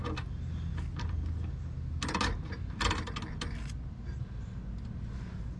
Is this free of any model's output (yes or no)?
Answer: yes